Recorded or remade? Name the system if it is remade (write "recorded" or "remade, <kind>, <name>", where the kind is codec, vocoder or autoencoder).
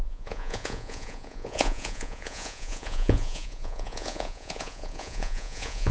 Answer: remade, vocoder, Vocos